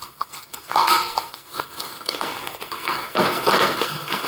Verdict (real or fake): fake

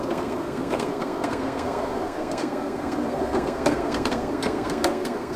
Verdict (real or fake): fake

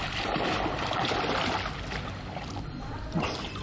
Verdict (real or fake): real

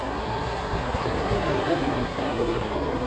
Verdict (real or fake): fake